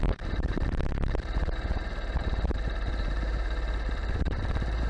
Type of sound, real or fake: fake